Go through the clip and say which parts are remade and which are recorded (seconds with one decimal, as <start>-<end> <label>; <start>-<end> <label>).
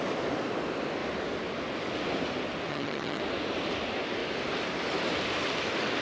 0.0-2.7 recorded; 2.7-3.2 remade; 3.2-6.0 recorded